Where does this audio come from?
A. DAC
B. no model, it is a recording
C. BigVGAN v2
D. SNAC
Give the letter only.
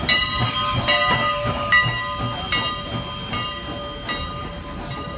B